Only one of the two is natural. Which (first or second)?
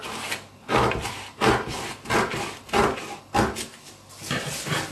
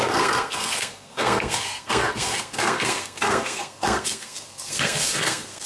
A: first